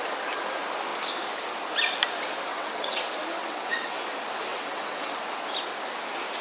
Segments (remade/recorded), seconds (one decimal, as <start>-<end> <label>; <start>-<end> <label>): 0.0-2.5 recorded; 2.5-3.0 remade; 3.0-3.4 recorded; 3.4-4.0 remade; 4.0-4.5 recorded; 4.5-5.2 remade; 5.2-6.4 recorded